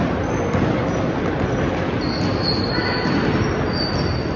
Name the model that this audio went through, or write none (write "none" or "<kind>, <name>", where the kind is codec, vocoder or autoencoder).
none